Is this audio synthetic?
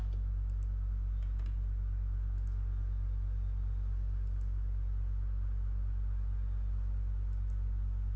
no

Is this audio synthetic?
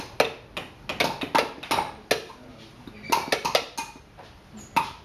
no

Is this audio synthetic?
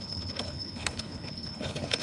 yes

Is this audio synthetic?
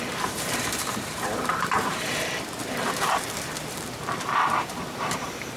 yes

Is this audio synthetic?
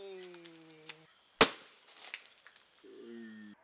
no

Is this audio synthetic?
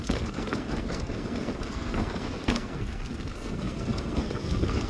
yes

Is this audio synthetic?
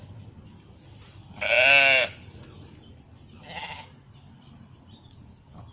no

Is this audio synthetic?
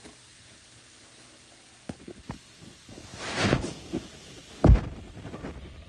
no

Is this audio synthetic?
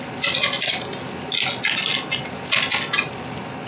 no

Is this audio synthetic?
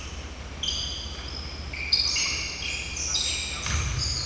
no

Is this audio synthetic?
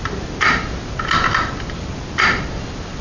no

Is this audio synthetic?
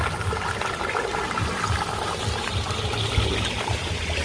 no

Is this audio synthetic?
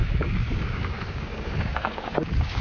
yes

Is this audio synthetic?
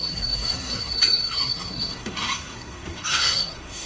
yes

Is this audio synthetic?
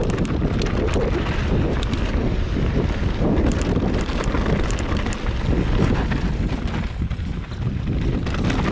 no